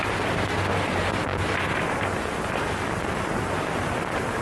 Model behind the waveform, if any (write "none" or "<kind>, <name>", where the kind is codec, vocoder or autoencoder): none